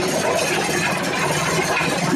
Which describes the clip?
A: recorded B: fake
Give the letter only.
A